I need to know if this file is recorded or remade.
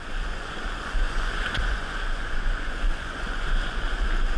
remade